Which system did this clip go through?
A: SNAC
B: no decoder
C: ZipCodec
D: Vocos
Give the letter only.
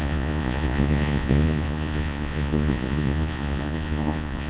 D